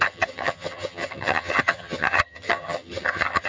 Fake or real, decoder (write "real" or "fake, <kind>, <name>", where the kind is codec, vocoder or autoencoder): fake, vocoder, HiFi-GAN